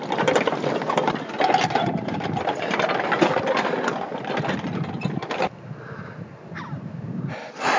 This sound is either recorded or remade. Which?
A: recorded